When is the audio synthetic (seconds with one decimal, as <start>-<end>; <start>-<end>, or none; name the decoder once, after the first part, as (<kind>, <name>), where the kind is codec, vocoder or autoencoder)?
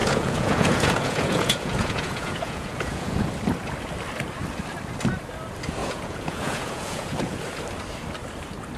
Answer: 0.0-3.3 (vocoder, Vocos); 5.8-7.4